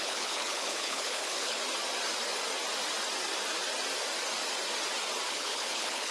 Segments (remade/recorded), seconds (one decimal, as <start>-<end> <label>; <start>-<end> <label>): 0.0-1.6 remade; 1.6-5.3 recorded; 5.3-6.1 remade